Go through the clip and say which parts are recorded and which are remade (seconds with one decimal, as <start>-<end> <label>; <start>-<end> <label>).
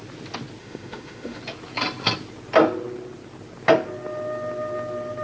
0.0-0.6 recorded; 0.6-1.4 remade; 1.4-5.2 recorded